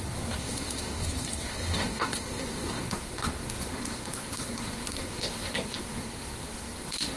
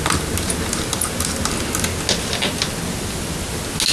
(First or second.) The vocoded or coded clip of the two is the first